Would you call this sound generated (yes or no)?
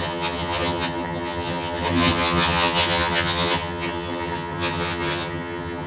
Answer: yes